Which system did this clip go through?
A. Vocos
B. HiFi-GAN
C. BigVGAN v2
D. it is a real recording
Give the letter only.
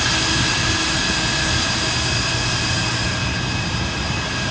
D